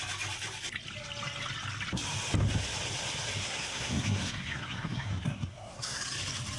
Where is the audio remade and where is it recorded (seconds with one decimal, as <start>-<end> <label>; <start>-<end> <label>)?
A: 0.0-3.4 recorded; 3.4-6.0 remade; 6.0-6.6 recorded

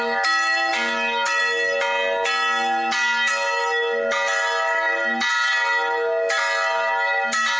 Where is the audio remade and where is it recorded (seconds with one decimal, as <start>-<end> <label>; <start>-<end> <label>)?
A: 0.0-7.6 recorded

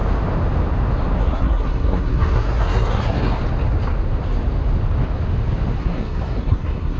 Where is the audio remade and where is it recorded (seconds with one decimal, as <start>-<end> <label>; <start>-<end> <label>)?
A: 0.0-1.2 recorded; 1.2-3.4 remade; 3.4-5.8 recorded; 5.8-7.0 remade

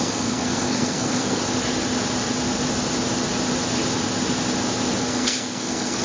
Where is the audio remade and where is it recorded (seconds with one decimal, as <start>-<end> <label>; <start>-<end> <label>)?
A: 0.0-1.4 remade; 1.4-5.0 recorded; 5.0-6.0 remade